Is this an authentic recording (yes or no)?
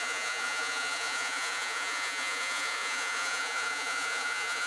no